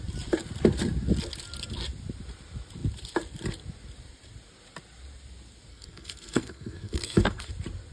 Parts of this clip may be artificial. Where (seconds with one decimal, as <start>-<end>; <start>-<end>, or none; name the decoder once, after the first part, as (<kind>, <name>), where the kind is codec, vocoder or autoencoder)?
5.7-7.5 (codec, SNAC)